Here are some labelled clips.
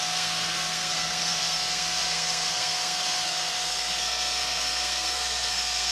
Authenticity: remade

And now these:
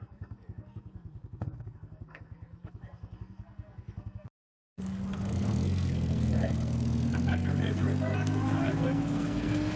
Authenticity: remade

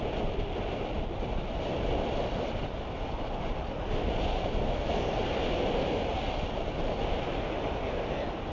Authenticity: recorded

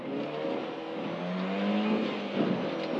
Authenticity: recorded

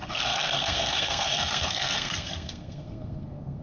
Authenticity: remade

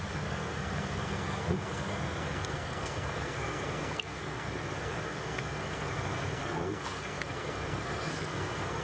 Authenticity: remade